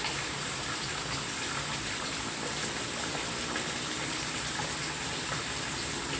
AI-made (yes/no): no